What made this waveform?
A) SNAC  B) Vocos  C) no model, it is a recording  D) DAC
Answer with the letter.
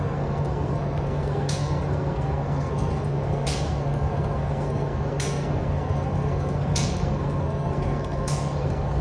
A